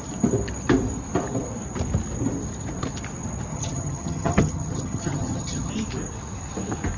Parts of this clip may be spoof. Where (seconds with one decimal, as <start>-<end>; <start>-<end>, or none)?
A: 3.5-5.7